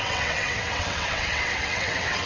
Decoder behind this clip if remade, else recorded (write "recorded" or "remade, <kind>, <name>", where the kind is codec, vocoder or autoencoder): remade, vocoder, WaveNeXt